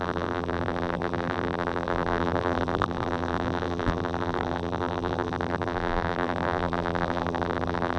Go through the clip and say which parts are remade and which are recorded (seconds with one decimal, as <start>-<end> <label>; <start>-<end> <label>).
0.0-8.0 remade